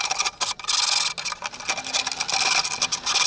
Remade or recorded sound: recorded